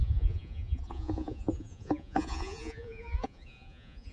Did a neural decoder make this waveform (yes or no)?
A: yes